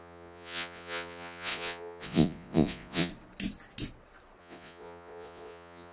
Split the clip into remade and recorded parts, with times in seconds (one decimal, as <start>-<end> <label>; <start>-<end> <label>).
0.0-3.1 remade; 3.1-4.4 recorded; 4.4-5.9 remade